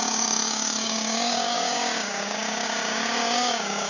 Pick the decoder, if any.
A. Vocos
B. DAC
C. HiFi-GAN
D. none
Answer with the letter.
B